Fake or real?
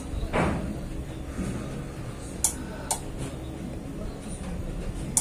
real